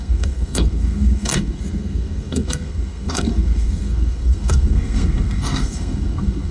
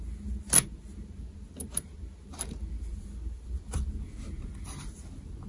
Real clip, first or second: second